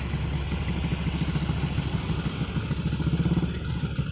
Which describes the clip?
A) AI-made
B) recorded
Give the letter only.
B